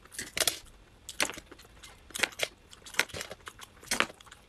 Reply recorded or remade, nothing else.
recorded